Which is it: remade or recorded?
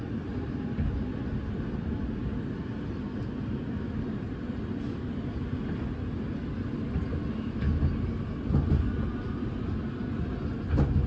recorded